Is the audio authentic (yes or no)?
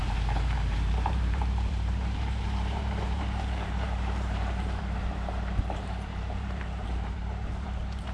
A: no